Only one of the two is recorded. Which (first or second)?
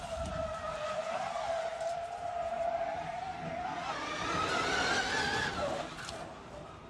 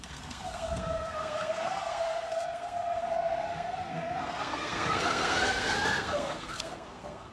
first